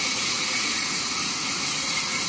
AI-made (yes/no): yes